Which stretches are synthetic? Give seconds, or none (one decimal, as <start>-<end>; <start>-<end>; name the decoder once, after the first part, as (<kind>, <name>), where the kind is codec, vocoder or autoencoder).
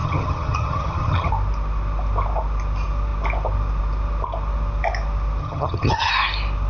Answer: 0.0-1.3 (vocoder, HiFi-GAN); 5.4-6.1